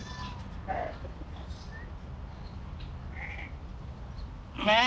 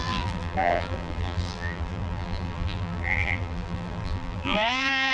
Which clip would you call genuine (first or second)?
first